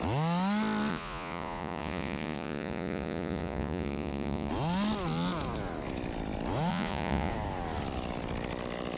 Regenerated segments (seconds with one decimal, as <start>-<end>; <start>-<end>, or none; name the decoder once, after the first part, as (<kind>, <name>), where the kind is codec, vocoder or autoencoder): 0.9-4.5 (vocoder, Vocos); 6.7-7.3